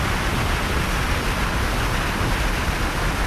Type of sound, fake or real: real